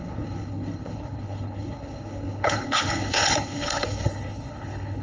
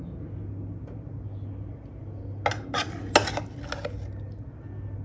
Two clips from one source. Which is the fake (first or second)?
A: first